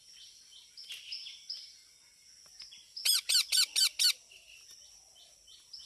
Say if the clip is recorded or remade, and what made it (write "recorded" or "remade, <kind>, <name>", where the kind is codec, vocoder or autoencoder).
recorded